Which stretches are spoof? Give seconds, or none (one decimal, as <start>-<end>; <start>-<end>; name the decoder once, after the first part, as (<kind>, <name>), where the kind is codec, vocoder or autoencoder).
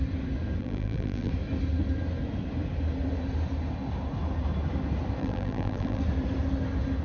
0.6-1.3 (vocoder, BigVGAN v2); 5.2-6.0